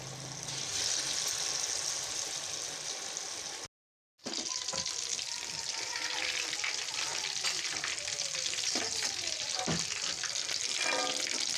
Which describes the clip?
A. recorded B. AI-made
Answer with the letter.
A